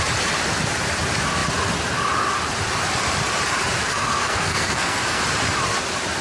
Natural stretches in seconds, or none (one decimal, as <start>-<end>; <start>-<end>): 0.0-3.8; 5.2-6.2